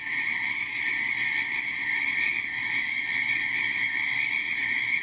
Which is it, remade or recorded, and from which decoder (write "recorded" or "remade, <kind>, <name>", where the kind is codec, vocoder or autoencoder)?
recorded